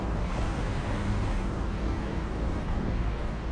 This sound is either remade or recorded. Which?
remade